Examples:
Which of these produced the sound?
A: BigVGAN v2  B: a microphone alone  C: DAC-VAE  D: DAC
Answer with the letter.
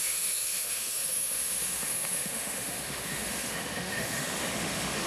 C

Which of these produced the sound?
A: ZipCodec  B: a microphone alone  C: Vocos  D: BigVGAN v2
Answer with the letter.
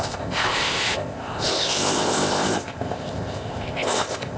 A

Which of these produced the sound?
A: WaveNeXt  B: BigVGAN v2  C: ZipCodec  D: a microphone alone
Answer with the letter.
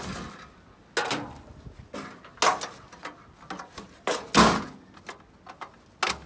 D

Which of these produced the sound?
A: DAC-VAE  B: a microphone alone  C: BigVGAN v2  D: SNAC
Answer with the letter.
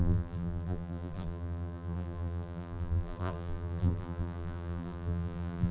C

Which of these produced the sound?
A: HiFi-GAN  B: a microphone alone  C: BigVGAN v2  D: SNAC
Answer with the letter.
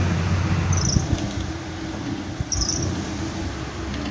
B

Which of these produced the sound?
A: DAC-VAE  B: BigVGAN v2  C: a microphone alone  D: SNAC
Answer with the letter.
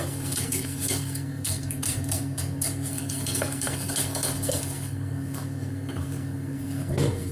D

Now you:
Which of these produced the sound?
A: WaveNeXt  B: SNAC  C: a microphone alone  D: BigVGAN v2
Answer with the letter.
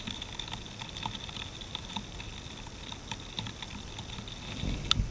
C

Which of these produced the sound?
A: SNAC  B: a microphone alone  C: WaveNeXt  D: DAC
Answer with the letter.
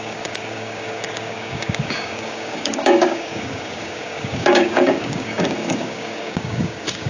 D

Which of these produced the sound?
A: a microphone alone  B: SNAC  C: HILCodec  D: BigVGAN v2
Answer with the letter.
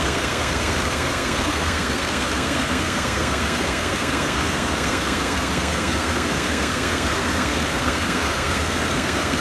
B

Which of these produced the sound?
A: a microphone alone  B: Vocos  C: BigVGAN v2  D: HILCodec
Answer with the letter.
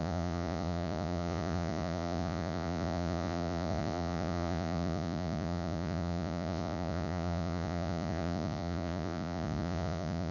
B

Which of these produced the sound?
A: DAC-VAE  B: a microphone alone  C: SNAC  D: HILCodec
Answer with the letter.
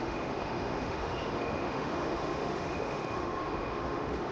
A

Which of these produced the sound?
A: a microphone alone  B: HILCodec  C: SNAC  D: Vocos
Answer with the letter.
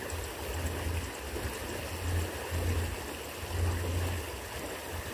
A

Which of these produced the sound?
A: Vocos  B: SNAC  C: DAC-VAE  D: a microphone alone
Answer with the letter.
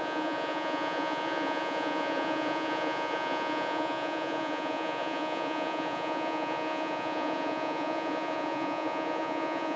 A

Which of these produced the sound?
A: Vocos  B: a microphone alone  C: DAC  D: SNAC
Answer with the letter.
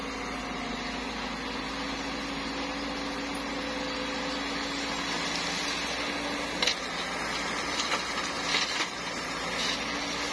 B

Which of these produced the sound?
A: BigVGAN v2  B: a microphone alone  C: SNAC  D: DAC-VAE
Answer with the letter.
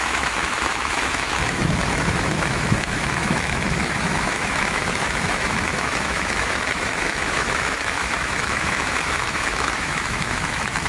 D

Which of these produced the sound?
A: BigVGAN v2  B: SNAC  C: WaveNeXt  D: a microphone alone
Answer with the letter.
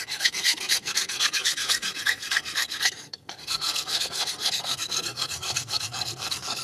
B